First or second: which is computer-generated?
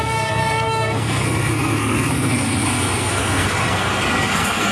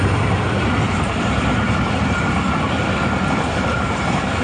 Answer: first